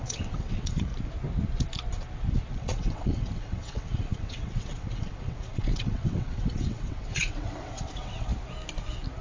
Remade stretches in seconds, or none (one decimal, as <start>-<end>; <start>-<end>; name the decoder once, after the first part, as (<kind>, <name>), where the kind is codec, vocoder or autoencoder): 0.0-0.9 (vocoder, WaveNeXt); 2.5-8.3